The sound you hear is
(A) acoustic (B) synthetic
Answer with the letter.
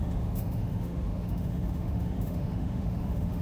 B